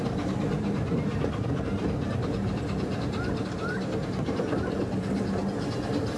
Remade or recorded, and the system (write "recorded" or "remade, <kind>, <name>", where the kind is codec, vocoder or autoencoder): remade, vocoder, BigVGAN v2